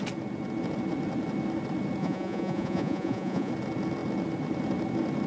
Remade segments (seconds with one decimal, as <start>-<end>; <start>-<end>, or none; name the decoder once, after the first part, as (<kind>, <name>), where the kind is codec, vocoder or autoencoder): 2.0-3.5 (vocoder, Vocos)